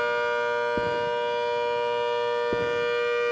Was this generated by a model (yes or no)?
no